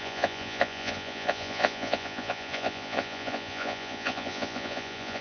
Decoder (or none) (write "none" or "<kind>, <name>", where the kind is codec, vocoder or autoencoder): vocoder, Vocos